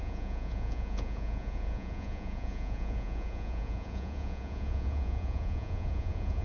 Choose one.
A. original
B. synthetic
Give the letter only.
B